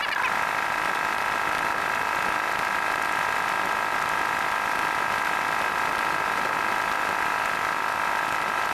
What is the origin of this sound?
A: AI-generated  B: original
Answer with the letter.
B